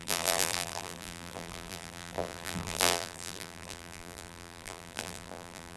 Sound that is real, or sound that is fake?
fake